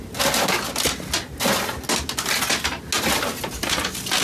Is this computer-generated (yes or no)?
no